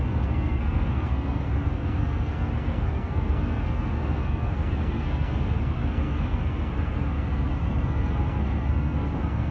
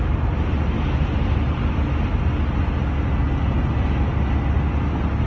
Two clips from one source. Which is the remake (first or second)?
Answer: first